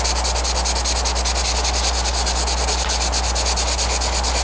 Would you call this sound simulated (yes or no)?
no